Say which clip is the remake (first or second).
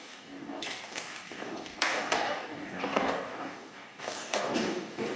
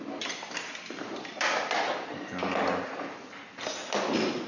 first